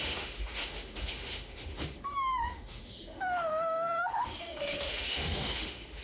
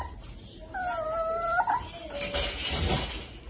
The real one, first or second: second